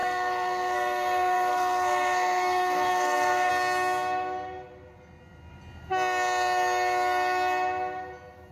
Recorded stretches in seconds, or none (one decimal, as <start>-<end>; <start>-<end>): 3.5-8.5